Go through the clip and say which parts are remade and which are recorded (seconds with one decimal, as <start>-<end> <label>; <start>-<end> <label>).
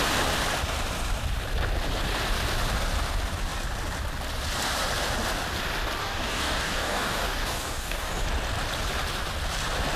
0.0-6.0 recorded; 6.0-8.1 remade; 8.1-10.0 recorded